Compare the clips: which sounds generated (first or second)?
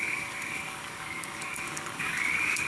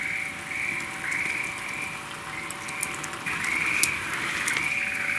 first